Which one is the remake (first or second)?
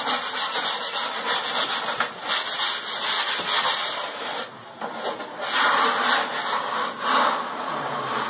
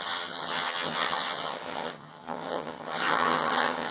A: second